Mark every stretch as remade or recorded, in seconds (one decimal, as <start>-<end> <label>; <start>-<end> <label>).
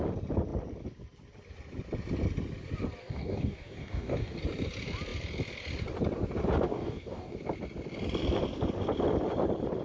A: 0.0-3.0 recorded; 3.0-4.4 remade; 4.4-6.7 recorded; 6.7-7.4 remade; 7.4-9.8 recorded